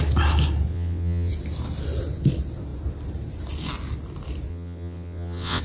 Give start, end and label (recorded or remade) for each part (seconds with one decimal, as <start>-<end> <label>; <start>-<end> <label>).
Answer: 0.0-0.7 recorded; 0.7-1.3 remade; 1.3-4.5 recorded; 4.5-5.6 remade